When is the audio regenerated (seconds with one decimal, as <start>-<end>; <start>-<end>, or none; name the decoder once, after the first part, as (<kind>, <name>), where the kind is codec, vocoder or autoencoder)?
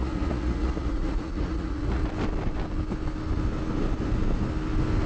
0.0-2.0 (vocoder, Vocos)